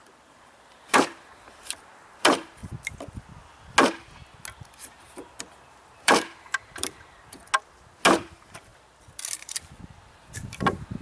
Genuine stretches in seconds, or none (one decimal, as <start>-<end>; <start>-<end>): 2.6-4.8; 7.4-8.2; 8.7-10.0